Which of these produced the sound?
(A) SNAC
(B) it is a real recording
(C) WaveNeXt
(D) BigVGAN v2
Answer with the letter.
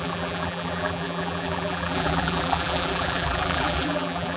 D